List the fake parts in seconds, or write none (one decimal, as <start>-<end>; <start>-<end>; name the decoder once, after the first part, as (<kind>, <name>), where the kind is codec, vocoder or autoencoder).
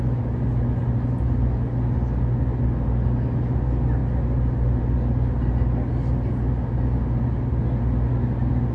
none